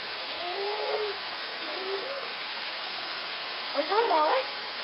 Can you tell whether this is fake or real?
fake